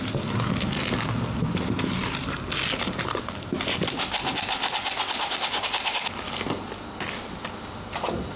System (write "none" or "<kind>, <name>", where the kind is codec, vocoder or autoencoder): none